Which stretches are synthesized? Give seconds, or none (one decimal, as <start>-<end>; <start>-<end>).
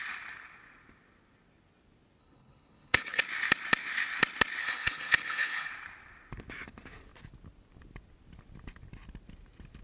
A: 2.2-3.2; 4.6-5.7